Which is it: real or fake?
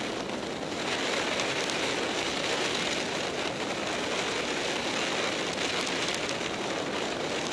real